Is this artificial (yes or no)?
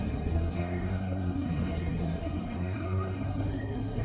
yes